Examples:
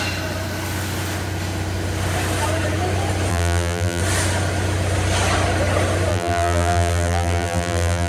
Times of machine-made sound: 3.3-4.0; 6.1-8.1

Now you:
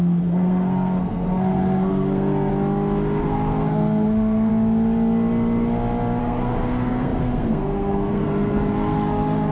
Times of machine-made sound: 0.0-2.5; 3.2-4.5; 6.2-9.5

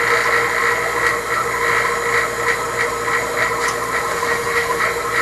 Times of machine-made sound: 4.1-4.8

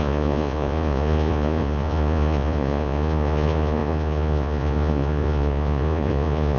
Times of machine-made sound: 0.0-6.6

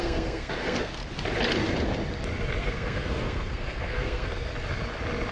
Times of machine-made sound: 0.0-1.0; 2.6-4.5